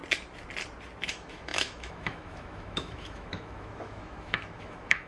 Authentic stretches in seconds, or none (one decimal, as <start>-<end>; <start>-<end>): 0.0-1.1